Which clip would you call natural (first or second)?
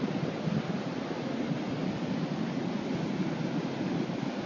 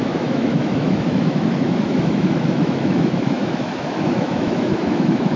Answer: first